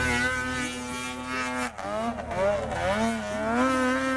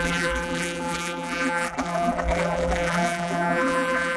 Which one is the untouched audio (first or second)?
first